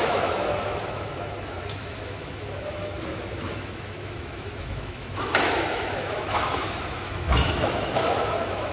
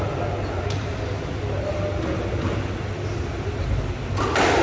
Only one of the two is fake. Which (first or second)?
first